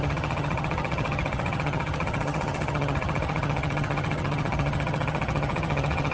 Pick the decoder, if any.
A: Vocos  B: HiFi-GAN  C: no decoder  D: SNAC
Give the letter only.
B